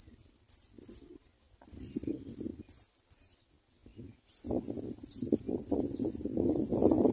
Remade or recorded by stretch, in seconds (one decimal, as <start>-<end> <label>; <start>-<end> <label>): 0.0-7.1 recorded